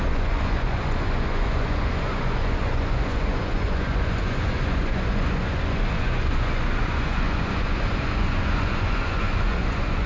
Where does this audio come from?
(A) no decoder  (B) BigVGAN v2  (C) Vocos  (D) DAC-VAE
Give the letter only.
C